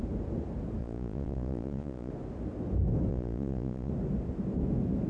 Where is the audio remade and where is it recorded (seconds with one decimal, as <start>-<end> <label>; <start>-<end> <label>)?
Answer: 0.0-0.8 recorded; 0.8-2.1 remade; 2.1-3.1 recorded; 3.1-3.9 remade; 3.9-5.1 recorded